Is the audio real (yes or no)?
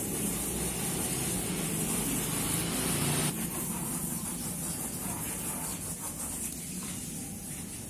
yes